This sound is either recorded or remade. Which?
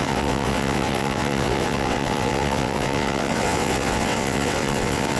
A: remade